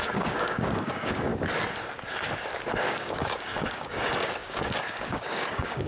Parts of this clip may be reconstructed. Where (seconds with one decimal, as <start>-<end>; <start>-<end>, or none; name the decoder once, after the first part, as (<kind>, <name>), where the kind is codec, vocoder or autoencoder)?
0.0-1.3 (codec, DAC); 2.8-5.9